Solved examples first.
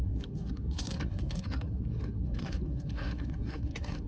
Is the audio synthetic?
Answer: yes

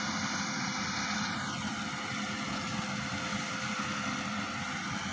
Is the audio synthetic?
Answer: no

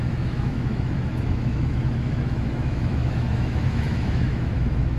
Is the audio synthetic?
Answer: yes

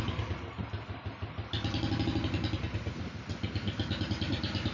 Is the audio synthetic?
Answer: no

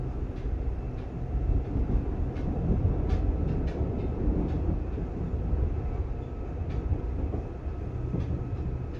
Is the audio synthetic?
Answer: no